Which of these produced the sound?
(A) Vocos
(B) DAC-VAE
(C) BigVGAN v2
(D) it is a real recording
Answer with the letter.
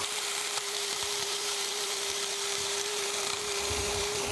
C